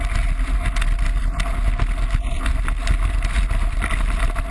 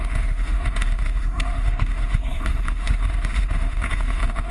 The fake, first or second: second